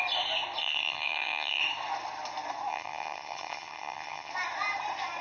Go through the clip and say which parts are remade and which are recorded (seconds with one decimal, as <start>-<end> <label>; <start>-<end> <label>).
0.0-0.6 recorded; 0.6-1.6 remade; 1.6-2.7 recorded; 2.7-4.3 remade; 4.3-5.2 recorded